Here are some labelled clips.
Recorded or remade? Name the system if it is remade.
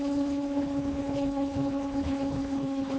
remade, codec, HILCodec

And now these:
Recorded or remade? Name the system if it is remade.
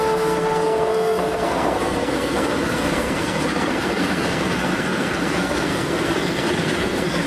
remade, codec, SNAC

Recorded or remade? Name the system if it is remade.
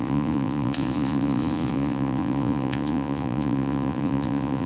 remade, vocoder, Vocos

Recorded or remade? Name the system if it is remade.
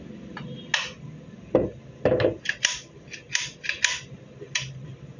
recorded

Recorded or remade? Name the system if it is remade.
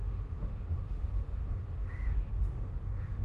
remade, autoencoder, DAC-VAE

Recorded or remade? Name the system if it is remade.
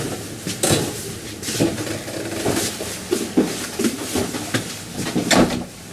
recorded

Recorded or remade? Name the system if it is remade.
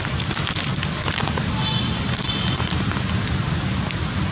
recorded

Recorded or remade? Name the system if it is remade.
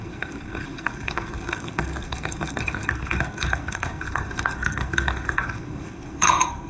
remade, codec, SNAC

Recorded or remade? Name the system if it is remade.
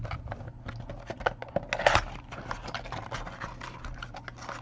recorded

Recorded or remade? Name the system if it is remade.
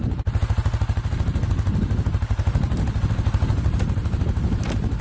recorded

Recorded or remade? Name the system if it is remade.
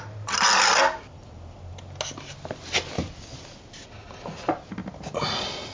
recorded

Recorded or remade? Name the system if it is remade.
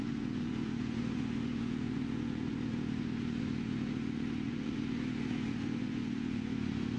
remade, vocoder, Vocos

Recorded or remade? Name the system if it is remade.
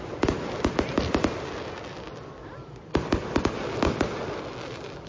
recorded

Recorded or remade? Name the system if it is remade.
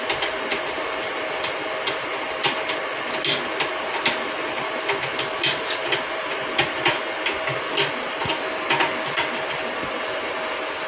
recorded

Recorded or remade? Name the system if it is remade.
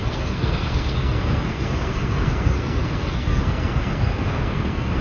remade, codec, SNAC